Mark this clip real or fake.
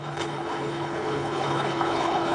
fake